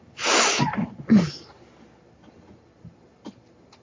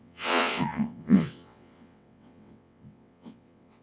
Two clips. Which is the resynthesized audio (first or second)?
second